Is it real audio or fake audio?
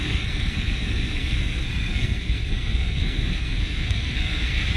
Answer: fake